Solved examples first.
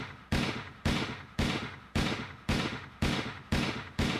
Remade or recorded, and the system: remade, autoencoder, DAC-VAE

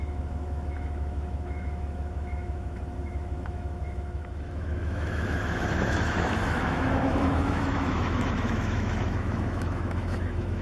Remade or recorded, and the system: remade, autoencoder, DAC-VAE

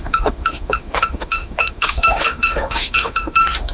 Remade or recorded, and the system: remade, autoencoder, DAC-VAE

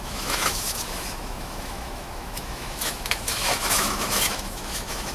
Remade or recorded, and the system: remade, autoencoder, DAC-VAE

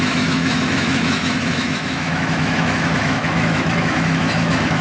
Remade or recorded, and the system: remade, autoencoder, DAC-VAE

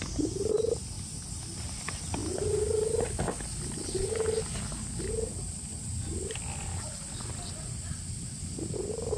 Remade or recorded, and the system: recorded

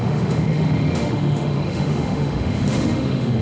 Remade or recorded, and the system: remade, autoencoder, DAC-VAE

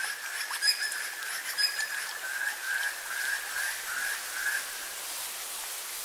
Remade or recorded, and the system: recorded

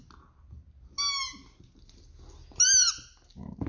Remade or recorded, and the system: recorded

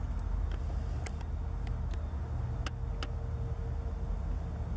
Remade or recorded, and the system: recorded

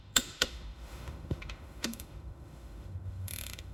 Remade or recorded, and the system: remade, autoencoder, DAC-VAE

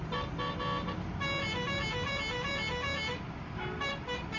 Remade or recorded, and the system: recorded